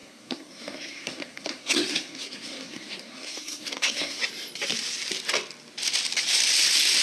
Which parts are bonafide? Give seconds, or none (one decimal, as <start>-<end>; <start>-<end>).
4.2-7.0